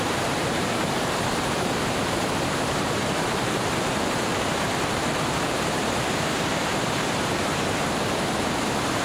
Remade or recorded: remade